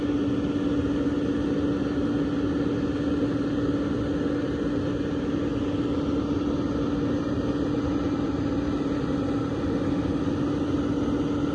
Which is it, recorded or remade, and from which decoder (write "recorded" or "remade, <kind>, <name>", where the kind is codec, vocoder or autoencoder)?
recorded